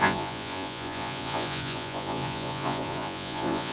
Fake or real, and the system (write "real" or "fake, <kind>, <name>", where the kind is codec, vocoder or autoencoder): fake, vocoder, Vocos